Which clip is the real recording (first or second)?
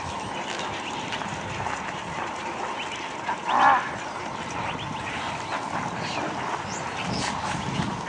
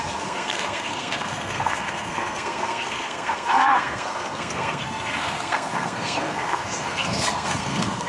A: first